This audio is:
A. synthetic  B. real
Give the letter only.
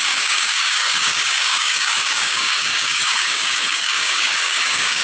A